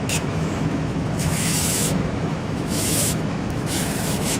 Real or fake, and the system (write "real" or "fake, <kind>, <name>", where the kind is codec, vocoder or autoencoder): fake, autoencoder, DAC-VAE